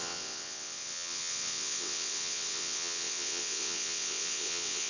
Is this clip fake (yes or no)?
yes